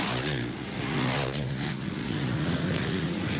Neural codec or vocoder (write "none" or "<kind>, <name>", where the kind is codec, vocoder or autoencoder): vocoder, Vocos